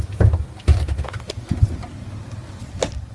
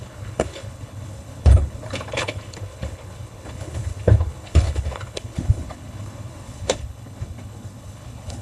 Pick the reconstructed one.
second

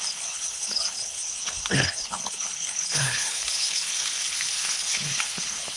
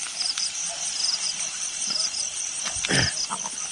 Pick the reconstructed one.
first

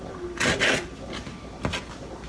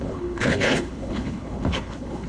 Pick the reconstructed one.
second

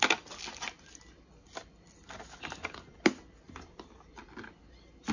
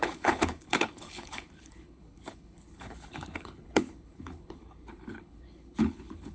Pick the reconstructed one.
second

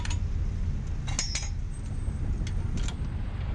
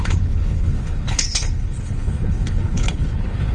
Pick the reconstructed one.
second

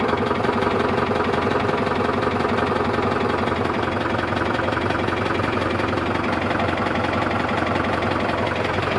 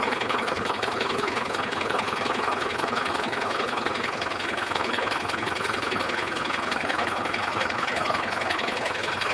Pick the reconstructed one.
second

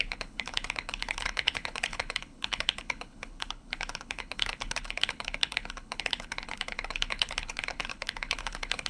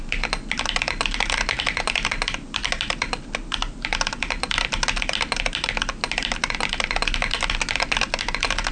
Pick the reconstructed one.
first